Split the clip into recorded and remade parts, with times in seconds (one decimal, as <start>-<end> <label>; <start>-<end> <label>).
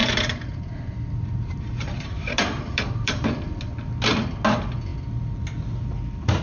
0.0-3.3 remade; 3.3-6.4 recorded